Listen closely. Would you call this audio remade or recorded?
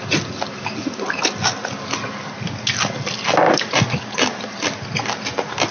recorded